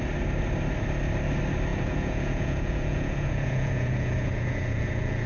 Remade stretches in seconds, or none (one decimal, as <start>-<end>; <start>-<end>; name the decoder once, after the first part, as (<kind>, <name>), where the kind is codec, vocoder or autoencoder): 1.7-5.3 (vocoder, Vocos)